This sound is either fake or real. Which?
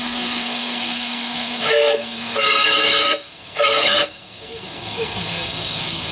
fake